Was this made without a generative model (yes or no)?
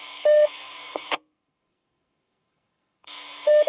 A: no